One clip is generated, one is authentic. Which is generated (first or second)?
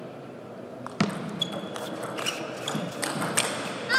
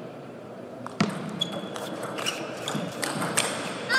second